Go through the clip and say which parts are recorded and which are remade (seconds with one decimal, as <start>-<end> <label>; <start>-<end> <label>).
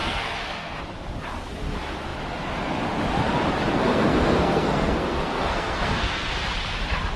0.0-0.8 remade; 0.8-3.7 recorded; 3.7-6.3 remade; 6.3-7.2 recorded